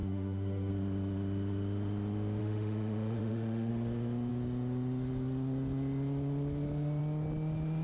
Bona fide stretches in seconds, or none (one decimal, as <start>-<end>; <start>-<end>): 0.7-2.4; 3.7-7.8